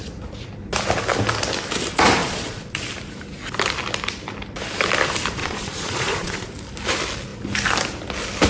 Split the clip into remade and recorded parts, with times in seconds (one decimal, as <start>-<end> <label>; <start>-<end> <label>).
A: 0.0-2.2 recorded; 2.2-2.8 remade; 2.8-5.4 recorded; 5.4-6.5 remade; 6.5-8.5 recorded